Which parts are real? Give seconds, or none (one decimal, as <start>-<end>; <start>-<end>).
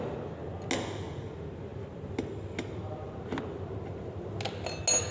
0.0-5.1